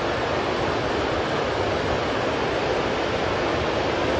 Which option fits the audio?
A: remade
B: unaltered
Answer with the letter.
B